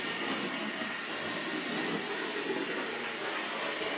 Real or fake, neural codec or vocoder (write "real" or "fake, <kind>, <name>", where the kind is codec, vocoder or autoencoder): real